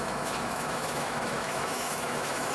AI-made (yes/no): yes